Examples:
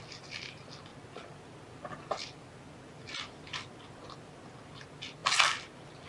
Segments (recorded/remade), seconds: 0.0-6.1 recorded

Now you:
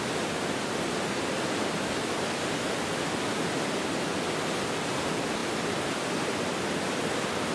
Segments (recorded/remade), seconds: 0.0-7.5 recorded

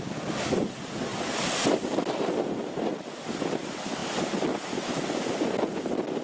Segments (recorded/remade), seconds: 0.0-6.2 recorded

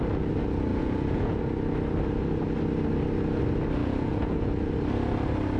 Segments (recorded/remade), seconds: 0.0-0.7 recorded; 0.7-1.4 remade; 1.4-3.8 recorded; 3.8-4.5 remade; 4.5-5.6 recorded